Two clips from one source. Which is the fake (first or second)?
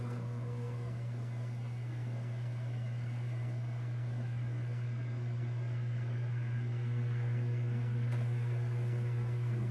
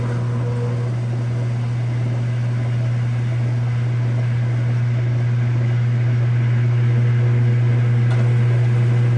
first